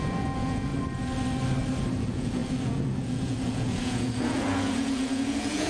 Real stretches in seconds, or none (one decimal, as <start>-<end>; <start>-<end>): 0.7-1.9